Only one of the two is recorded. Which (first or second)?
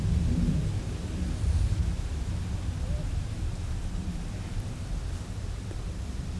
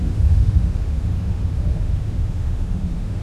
first